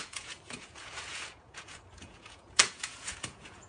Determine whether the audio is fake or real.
fake